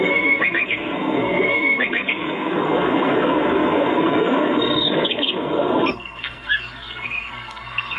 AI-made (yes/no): yes